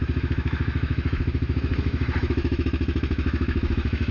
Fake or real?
fake